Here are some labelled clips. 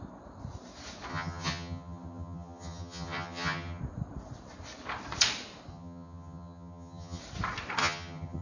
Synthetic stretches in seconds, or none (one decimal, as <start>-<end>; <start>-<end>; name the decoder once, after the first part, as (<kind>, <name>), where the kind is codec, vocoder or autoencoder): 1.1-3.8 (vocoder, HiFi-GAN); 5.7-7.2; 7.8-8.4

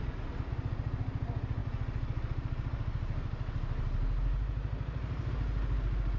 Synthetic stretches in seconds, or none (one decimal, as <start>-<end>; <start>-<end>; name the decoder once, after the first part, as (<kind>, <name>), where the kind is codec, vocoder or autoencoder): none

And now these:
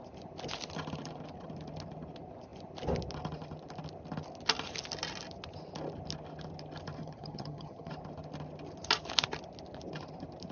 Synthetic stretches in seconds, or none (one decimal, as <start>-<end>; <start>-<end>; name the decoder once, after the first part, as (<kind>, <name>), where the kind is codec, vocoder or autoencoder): 7.0-7.9 (vocoder, HiFi-GAN)

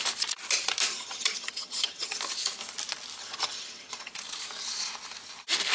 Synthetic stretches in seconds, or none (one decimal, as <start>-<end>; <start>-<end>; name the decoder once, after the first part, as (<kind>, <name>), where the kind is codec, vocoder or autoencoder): 0.9-2.2 (vocoder, HiFi-GAN); 3.2-4.1

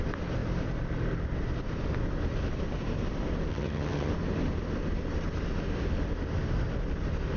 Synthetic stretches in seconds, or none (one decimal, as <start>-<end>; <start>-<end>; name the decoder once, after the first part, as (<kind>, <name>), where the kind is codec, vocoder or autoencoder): 3.5-4.1 (vocoder, HiFi-GAN)